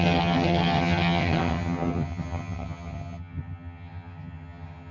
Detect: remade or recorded remade